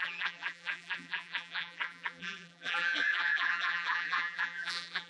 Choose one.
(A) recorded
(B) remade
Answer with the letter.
B